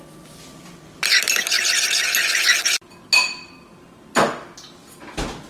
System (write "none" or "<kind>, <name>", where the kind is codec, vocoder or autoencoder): none